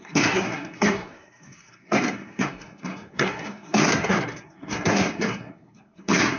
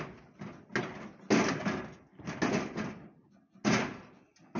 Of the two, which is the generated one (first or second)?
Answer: first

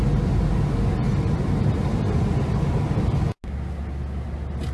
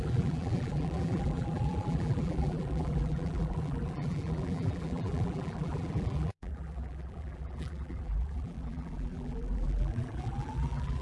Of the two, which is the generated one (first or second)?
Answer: second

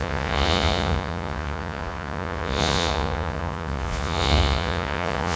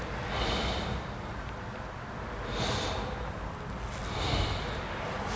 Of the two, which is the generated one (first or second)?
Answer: first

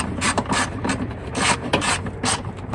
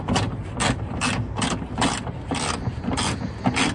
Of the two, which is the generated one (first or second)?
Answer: first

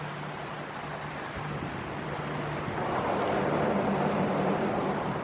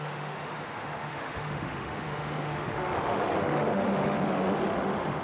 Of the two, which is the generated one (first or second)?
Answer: second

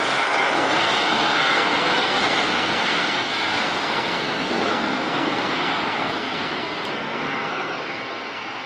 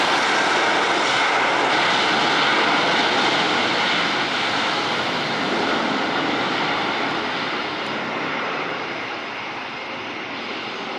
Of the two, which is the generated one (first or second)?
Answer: first